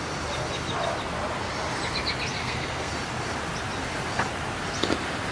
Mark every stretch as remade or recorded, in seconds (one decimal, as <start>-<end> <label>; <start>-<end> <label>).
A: 0.0-2.4 recorded; 2.4-2.9 remade; 2.9-5.3 recorded